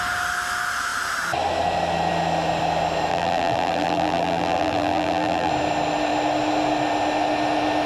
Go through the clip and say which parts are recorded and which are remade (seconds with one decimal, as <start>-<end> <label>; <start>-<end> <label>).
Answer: 0.0-3.1 recorded; 3.1-5.5 remade; 5.5-7.9 recorded